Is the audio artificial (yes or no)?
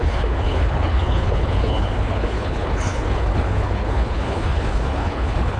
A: yes